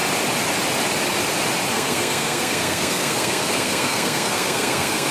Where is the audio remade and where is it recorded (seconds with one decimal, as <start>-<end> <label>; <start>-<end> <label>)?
0.0-1.7 recorded; 1.7-5.1 remade